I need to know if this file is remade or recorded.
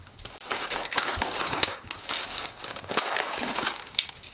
remade